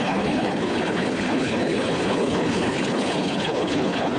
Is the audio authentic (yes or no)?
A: no